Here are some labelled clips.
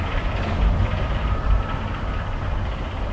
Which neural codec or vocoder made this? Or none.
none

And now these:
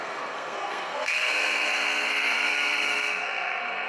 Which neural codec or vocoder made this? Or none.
codec, SNAC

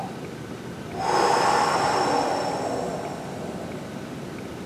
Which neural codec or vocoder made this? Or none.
none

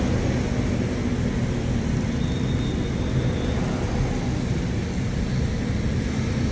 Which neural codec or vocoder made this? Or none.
none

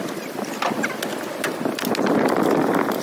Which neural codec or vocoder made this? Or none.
none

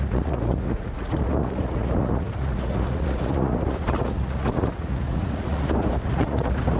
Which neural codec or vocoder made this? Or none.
vocoder, Vocos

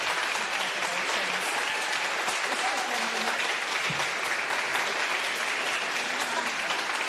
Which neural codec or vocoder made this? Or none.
none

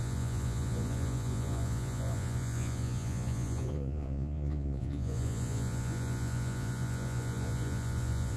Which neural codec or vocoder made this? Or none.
vocoder, Vocos